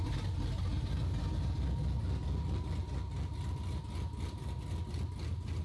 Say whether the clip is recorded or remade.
recorded